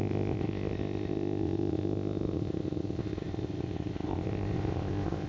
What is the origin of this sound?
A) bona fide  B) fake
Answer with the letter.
B